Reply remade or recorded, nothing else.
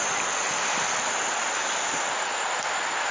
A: recorded